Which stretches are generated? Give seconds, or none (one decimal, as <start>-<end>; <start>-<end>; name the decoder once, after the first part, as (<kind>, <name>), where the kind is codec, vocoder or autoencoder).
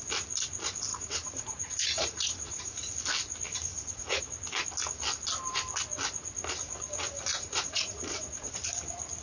0.9-2.9 (vocoder, Vocos); 3.7-4.2; 7.3-8.5